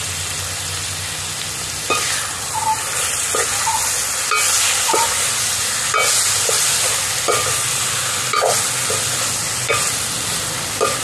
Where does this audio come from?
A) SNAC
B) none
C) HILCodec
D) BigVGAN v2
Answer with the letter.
B